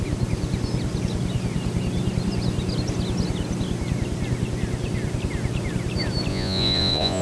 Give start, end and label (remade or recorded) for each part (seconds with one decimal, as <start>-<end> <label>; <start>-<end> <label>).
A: 0.0-6.3 recorded; 6.3-7.2 remade